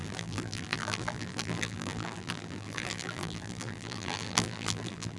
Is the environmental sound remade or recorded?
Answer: remade